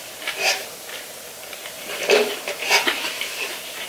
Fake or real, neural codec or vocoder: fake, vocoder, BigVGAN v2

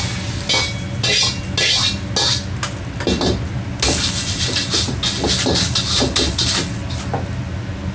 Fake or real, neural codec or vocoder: real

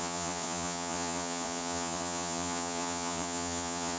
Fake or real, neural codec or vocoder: fake, vocoder, Vocos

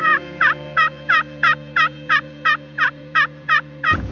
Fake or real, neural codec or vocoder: fake, vocoder, Vocos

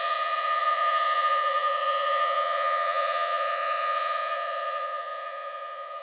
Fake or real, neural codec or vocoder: fake, vocoder, Vocos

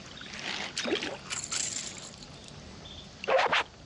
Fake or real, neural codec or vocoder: real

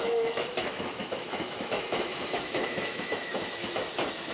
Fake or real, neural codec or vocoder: fake, autoencoder, DAC-VAE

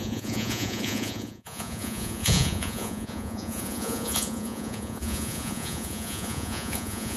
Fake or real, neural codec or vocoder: fake, vocoder, Vocos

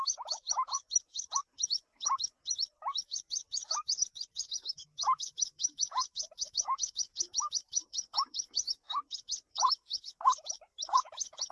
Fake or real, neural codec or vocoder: fake, autoencoder, DAC-VAE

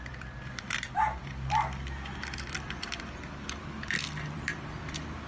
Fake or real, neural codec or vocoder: fake, vocoder, BigVGAN v2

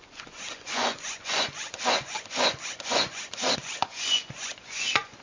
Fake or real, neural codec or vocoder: fake, vocoder, Vocos